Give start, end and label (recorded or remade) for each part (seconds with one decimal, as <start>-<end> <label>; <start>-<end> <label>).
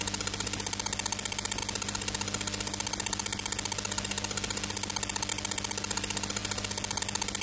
0.0-7.4 recorded